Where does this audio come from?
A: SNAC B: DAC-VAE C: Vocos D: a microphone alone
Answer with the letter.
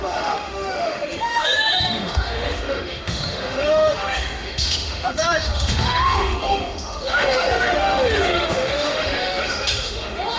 B